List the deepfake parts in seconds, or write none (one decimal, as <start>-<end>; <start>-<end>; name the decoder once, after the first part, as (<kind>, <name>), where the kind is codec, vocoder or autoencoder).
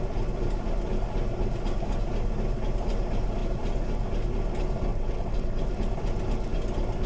4.9-5.6 (vocoder, WaveNeXt)